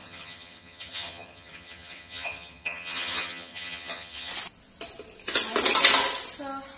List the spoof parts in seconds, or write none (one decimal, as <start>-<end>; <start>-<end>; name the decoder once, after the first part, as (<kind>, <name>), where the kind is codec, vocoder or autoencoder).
0.0-4.3 (vocoder, HiFi-GAN)